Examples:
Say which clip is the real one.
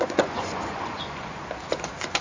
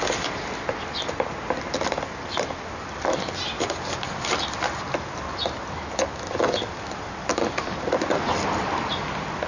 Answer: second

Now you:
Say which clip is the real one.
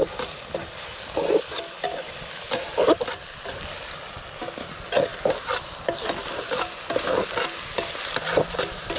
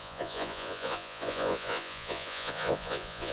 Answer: first